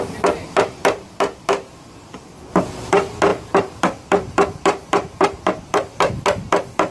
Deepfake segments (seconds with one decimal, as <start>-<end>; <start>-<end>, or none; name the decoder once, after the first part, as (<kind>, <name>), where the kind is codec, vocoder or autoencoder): 3.3-6.2 (vocoder, BigVGAN v2)